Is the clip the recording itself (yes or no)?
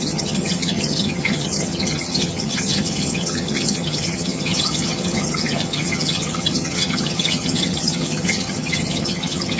no